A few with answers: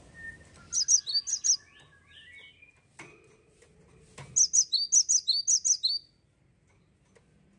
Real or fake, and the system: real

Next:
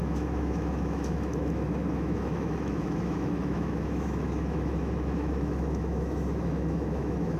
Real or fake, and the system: fake, autoencoder, DAC-VAE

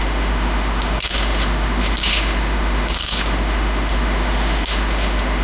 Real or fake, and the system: fake, autoencoder, DAC-VAE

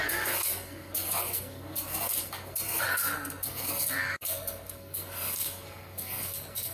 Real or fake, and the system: fake, codec, SNAC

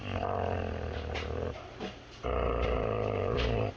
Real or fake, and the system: real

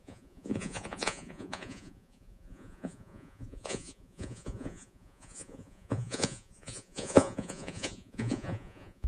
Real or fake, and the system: fake, vocoder, Vocos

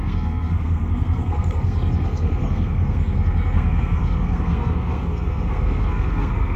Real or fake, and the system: fake, codec, SNAC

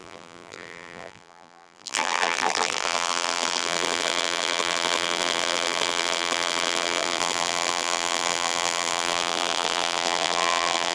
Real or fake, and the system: fake, vocoder, BigVGAN v2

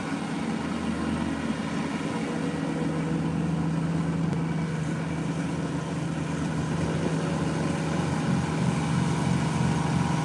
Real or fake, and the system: real